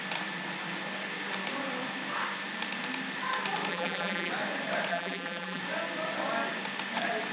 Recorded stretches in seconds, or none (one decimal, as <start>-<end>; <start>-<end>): 0.0-3.7; 4.3-4.9; 5.6-7.3